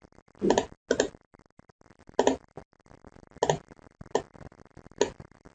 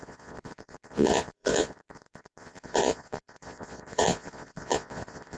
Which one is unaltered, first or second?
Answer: first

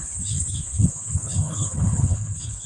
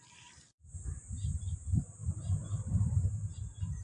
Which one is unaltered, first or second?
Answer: second